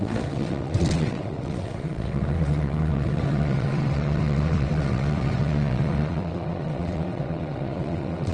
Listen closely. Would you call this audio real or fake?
fake